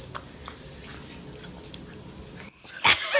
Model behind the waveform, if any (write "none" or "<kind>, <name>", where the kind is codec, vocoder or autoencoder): none